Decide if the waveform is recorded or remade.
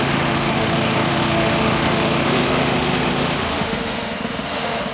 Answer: remade